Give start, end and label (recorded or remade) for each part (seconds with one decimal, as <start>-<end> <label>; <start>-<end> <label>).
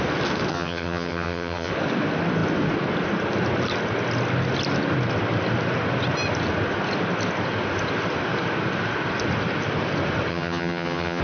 0.0-0.5 recorded; 0.5-1.7 remade; 1.7-10.3 recorded; 10.3-11.2 remade